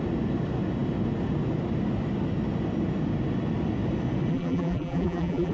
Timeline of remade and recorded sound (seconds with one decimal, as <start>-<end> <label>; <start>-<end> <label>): 0.0-4.3 recorded; 4.3-5.5 remade